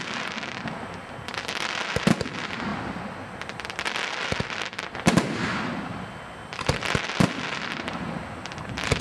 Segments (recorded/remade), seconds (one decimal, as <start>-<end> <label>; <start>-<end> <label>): 0.0-9.0 recorded